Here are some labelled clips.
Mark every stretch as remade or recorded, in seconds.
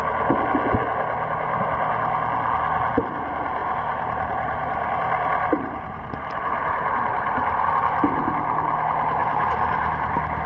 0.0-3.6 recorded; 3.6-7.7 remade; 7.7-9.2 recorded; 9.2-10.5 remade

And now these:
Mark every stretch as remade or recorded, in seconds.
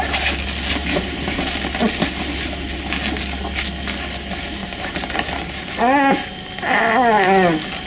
0.0-0.8 recorded; 0.8-1.4 remade; 1.4-4.6 recorded; 4.6-5.8 remade; 5.8-7.9 recorded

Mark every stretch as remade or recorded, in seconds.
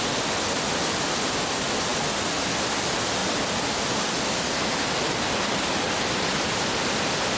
0.0-7.4 recorded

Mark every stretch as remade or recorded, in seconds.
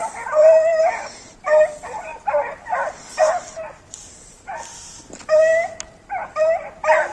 0.0-7.1 recorded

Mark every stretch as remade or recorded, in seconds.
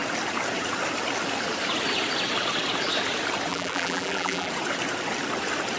0.0-3.5 recorded; 3.5-4.5 remade; 4.5-5.8 recorded